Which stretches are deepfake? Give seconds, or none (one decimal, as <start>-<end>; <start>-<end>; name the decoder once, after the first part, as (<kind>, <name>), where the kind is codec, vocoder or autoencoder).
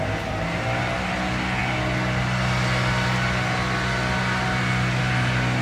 none